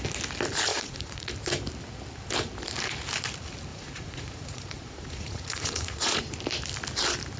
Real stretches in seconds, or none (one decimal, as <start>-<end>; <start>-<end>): 0.0-0.7; 1.3-3.7; 6.2-7.4